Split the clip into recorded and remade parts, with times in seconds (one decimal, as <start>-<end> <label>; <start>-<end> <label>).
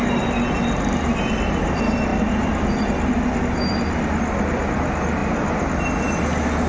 0.0-6.7 recorded